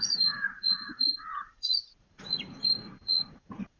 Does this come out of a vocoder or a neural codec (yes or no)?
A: yes